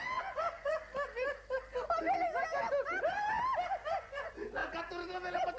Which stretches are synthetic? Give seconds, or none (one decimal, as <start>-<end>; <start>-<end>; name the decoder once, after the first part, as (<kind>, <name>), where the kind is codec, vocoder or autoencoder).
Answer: 0.0-0.8 (vocoder, Vocos); 4.0-4.6